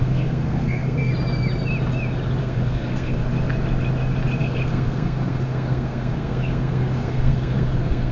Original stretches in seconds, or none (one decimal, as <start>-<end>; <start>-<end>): 1.1-2.4; 3.2-4.4